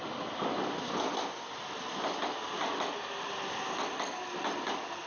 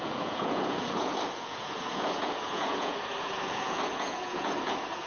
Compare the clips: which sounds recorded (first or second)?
first